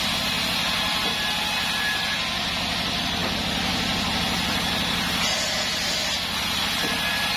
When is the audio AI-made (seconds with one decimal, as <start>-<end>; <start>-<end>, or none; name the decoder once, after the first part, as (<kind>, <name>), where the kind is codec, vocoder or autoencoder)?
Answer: none